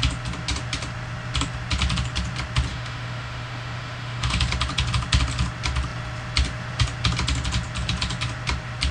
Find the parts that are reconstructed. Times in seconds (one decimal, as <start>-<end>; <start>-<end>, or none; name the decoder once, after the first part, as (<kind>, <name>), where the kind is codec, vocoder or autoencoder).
2.7-4.4 (autoencoder, DAC-VAE)